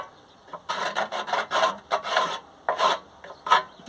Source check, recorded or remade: remade